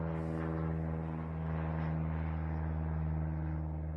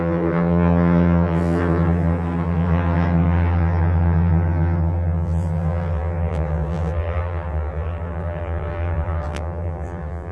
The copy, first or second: second